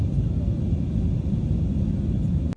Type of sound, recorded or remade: recorded